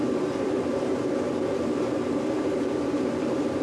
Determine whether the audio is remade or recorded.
remade